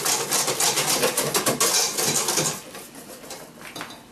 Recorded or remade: recorded